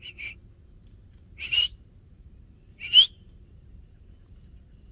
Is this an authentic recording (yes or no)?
no